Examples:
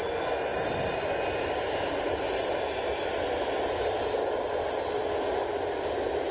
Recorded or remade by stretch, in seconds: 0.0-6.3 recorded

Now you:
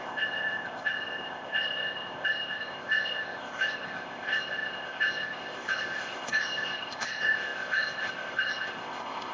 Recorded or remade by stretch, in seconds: 0.0-9.3 remade